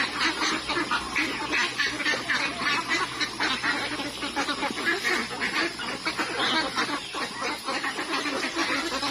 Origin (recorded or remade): recorded